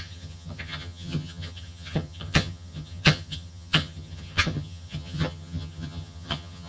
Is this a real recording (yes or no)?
no